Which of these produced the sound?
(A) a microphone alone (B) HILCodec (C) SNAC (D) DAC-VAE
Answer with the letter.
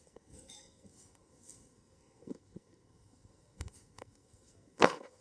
C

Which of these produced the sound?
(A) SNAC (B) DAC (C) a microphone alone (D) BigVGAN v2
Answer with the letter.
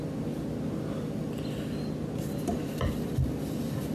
C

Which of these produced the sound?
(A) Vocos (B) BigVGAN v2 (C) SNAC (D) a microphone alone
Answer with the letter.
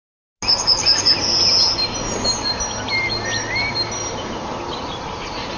D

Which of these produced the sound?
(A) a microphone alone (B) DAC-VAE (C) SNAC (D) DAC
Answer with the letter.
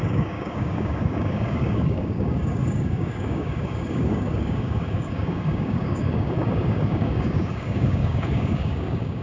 D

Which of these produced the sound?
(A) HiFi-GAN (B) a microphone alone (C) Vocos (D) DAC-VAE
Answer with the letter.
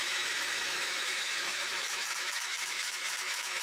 D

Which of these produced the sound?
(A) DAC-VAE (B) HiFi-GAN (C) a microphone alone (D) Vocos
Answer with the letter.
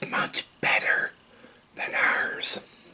C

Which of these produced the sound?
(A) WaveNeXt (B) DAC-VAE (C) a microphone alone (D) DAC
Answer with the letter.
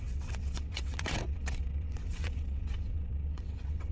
A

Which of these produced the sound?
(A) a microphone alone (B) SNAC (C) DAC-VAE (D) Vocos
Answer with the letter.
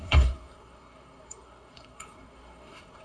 B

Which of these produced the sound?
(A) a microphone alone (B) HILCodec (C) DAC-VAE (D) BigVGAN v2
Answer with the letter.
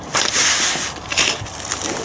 A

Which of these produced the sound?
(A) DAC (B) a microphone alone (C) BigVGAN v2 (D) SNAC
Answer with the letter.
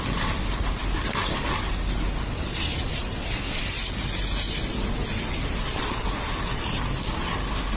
B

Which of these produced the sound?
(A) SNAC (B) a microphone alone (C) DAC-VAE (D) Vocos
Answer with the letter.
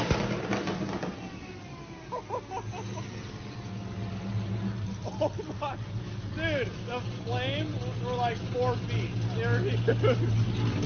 B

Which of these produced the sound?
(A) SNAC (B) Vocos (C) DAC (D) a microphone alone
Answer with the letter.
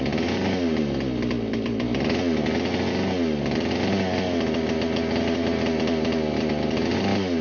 D